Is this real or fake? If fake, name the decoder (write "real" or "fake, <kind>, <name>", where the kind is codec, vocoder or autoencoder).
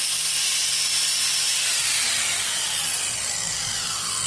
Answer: real